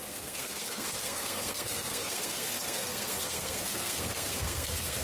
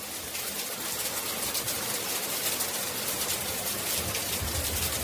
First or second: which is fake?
first